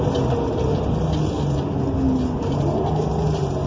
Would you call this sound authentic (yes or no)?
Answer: yes